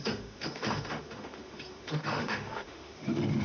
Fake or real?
fake